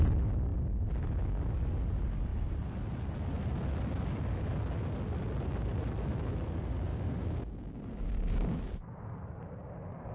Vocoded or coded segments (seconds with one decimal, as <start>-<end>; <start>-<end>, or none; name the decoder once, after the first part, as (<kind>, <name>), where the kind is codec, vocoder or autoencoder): 6.9-8.6 (codec, DAC)